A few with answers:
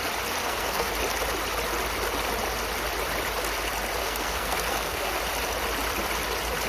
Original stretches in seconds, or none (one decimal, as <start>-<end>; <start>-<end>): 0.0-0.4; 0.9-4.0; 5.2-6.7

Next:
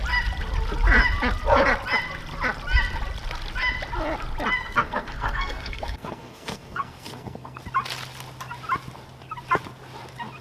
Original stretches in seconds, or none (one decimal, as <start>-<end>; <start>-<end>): 0.0-4.6; 7.6-10.4

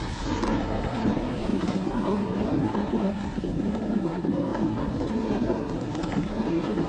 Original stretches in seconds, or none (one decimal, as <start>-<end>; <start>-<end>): none